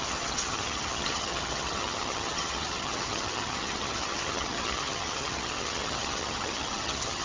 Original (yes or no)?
no